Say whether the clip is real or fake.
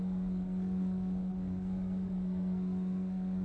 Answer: fake